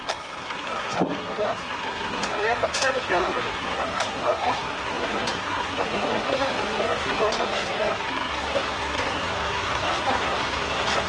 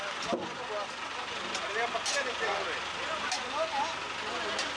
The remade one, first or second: first